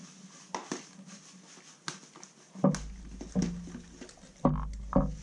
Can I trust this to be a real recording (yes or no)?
yes